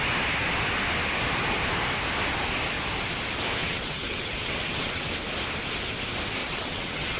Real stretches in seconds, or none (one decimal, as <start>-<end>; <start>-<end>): 0.0-3.6; 5.1-6.4